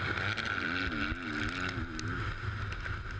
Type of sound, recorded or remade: recorded